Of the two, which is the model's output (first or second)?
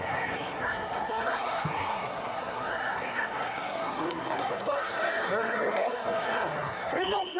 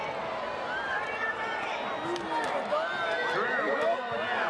first